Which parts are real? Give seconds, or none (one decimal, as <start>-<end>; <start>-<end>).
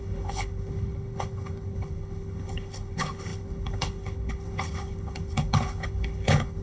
none